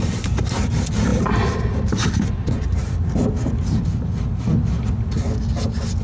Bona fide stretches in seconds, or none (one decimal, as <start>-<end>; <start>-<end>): 0.0-6.0

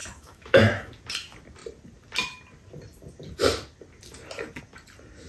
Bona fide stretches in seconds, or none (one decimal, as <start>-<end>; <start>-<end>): 0.9-5.3

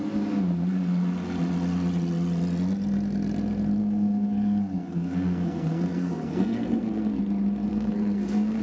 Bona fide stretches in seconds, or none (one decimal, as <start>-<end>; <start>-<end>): 0.0-3.8; 7.2-7.7

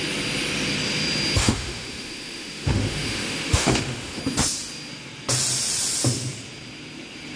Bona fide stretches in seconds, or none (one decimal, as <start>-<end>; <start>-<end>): 0.0-1.4; 4.2-7.4

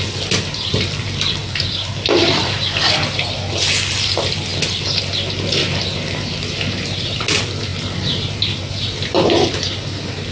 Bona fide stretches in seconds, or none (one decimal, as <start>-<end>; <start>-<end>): 0.0-10.3

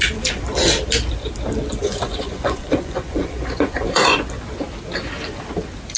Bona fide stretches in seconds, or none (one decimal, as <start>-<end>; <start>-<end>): 0.0-1.8; 4.2-6.0